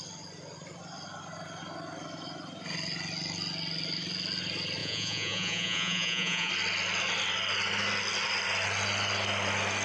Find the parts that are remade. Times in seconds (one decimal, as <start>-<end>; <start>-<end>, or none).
4.8-6.5